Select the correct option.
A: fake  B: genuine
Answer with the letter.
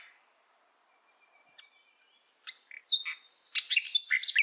B